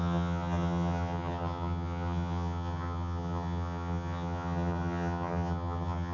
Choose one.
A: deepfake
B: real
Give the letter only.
A